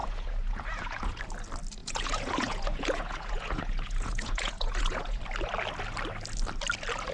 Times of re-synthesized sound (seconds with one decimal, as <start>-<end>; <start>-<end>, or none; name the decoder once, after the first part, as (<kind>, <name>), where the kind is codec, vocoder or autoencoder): 0.0-1.2 (vocoder, Vocos); 1.8-5.2